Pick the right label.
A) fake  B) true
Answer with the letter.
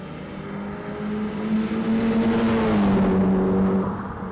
B